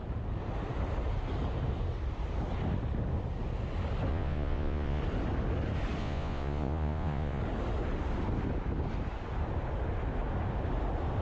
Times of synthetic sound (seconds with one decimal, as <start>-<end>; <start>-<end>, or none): 4.1-5.0; 6.0-7.4